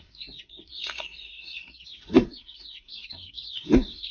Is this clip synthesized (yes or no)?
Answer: yes